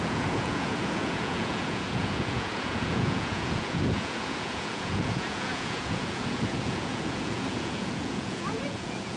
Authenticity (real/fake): fake